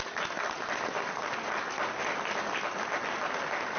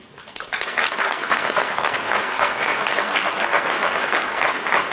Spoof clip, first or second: second